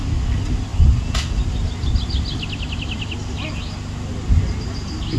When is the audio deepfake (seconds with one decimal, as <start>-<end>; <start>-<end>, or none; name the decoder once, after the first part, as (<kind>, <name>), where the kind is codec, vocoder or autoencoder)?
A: none